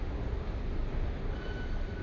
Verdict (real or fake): real